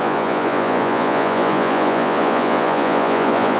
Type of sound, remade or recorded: remade